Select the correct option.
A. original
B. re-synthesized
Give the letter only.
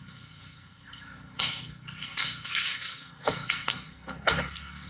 B